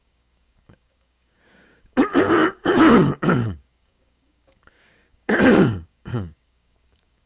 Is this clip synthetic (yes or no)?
yes